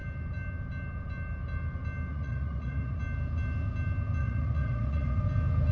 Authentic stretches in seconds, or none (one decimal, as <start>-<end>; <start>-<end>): 0.0-2.1; 3.0-4.2; 5.2-5.7